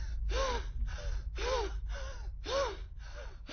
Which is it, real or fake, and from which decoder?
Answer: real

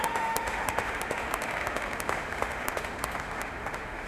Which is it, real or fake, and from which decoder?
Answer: fake, autoencoder, DAC-VAE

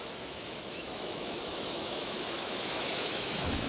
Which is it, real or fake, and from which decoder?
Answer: fake, autoencoder, DAC-VAE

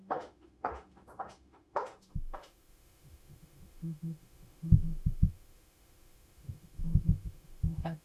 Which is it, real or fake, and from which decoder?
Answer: fake, autoencoder, DAC-VAE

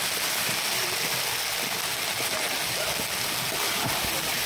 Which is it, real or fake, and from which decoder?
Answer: real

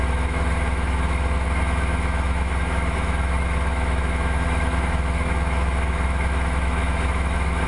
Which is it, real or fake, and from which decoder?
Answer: fake, autoencoder, DAC-VAE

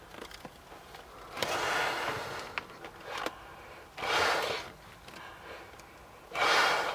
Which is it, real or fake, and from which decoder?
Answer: real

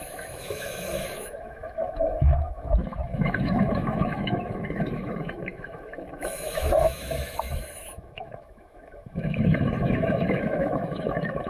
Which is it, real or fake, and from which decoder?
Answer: fake, autoencoder, DAC-VAE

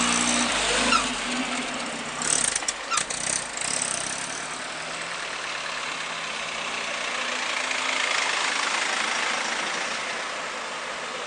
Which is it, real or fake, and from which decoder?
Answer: real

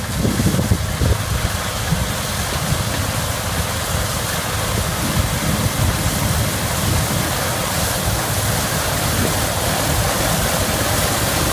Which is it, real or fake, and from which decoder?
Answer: real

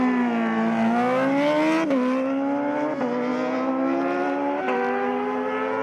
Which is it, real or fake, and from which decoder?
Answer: real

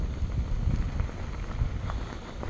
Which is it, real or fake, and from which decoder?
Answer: real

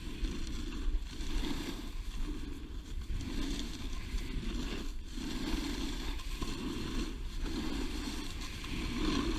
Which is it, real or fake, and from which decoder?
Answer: real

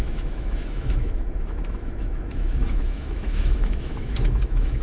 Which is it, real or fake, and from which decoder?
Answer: fake, autoencoder, DAC-VAE